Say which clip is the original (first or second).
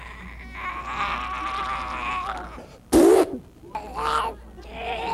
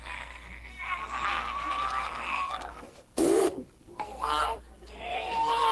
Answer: first